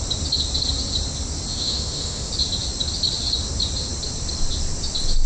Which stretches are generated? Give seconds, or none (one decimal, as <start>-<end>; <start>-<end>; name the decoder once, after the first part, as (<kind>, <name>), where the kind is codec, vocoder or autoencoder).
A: 1.5-2.3 (autoencoder, DAC-VAE)

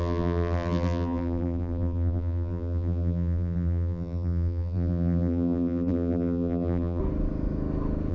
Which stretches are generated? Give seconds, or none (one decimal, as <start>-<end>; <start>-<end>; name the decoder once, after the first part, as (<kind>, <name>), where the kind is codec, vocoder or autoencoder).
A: 0.0-7.0 (vocoder, BigVGAN v2)